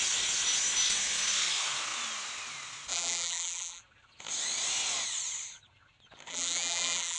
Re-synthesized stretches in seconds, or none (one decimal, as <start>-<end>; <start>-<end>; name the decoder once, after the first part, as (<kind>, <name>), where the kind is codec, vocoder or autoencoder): 2.9-3.8 (vocoder, BigVGAN v2); 6.3-7.2